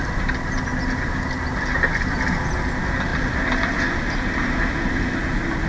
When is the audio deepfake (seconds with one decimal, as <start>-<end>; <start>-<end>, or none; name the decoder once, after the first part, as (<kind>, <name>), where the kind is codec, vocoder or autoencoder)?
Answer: none

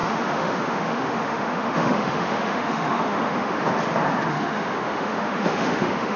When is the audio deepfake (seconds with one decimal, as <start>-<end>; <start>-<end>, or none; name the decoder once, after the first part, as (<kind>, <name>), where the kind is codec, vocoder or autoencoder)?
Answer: 0.0-3.7 (autoencoder, DAC-VAE); 4.3-6.2

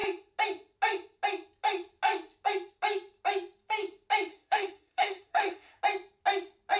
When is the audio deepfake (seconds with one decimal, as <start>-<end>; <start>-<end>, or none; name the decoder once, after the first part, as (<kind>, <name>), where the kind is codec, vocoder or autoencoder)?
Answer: 4.3-5.8 (autoencoder, DAC-VAE)